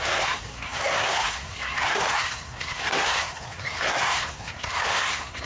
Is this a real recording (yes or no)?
no